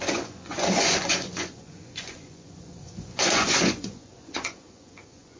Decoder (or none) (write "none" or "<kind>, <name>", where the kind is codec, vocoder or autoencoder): vocoder, Vocos